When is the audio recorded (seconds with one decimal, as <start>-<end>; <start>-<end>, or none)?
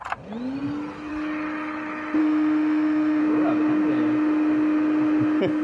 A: 0.0-2.2; 3.2-5.6